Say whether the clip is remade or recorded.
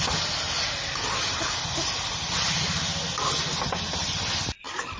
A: recorded